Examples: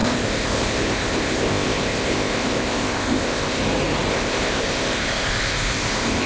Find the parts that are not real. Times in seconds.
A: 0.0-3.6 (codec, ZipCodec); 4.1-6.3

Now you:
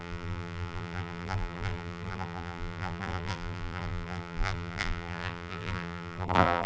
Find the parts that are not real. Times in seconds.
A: 0.0-6.7 (vocoder, BigVGAN v2)

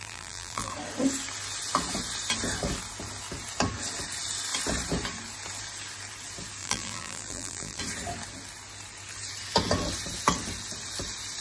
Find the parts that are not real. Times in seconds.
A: 0.0-0.7 (vocoder, BigVGAN v2); 6.6-7.8

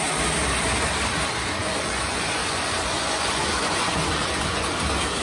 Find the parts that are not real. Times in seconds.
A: 1.6-4.7 (vocoder, Vocos)